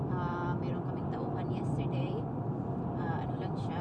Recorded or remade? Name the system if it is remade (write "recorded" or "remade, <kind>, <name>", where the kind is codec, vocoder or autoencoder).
recorded